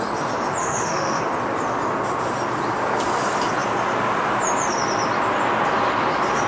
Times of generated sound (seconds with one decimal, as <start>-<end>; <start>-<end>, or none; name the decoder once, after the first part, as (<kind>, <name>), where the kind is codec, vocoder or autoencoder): 0.6-1.2 (autoencoder, DAC-VAE)